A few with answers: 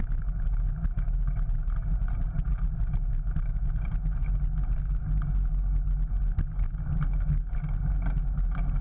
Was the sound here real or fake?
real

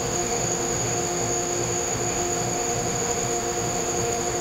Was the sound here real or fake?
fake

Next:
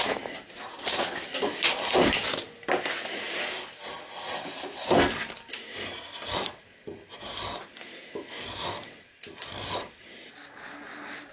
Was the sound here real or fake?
real